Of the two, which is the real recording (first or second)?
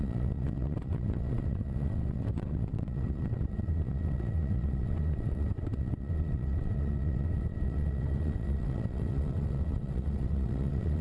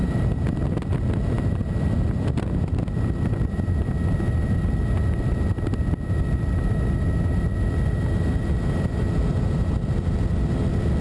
second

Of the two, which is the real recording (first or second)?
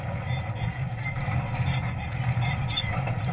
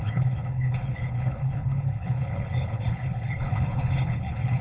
first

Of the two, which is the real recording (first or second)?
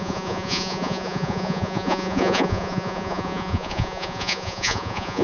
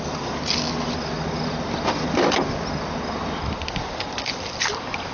second